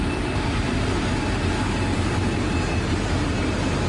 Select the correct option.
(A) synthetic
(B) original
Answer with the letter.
A